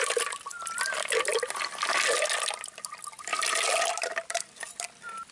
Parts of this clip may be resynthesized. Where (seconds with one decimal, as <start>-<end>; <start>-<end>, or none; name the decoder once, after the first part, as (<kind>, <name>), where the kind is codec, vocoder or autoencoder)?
none